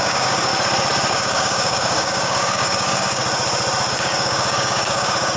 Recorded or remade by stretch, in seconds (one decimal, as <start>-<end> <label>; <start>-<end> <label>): 0.0-0.5 remade; 0.5-1.1 recorded; 1.1-3.2 remade; 3.2-3.9 recorded; 3.9-5.4 remade